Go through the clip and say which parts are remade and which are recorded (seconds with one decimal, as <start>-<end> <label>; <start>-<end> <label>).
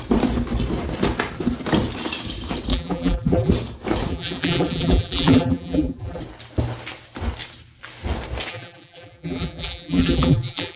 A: 0.0-2.7 recorded; 2.7-3.5 remade; 3.5-4.1 recorded; 4.1-6.2 remade; 6.2-8.5 recorded; 8.5-10.8 remade